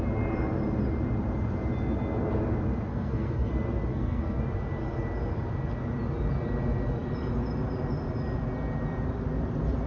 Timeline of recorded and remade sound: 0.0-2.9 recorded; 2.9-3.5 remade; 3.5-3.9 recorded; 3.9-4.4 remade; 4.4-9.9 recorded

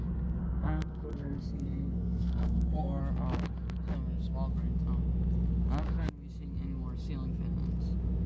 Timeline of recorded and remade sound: 0.0-0.4 recorded; 0.4-3.0 remade; 3.0-8.3 recorded

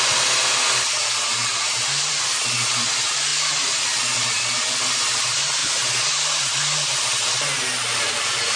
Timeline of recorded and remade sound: 0.0-8.6 recorded

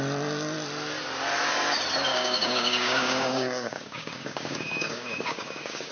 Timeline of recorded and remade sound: 0.0-2.1 recorded; 2.1-5.9 remade

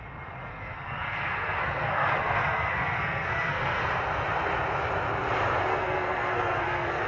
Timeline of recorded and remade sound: 0.0-0.5 recorded; 0.5-3.8 remade; 3.8-5.7 recorded; 5.7-7.1 remade

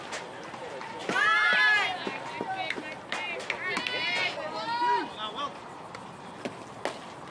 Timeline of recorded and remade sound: 0.0-7.3 recorded